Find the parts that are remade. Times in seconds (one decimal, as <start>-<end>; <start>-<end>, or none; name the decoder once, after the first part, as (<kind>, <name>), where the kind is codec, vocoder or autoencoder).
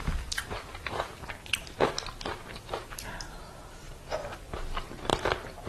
0.0-3.4 (vocoder, BigVGAN v2); 5.1-5.7